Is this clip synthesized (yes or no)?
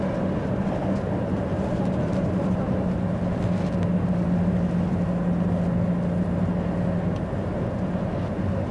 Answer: no